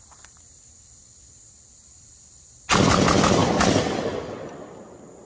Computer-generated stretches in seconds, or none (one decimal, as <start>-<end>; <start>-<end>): none